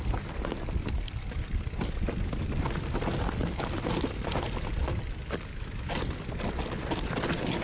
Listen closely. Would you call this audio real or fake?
real